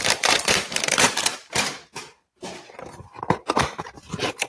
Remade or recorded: remade